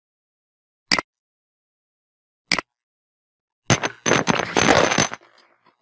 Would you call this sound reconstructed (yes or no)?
no